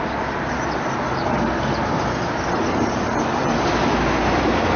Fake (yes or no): no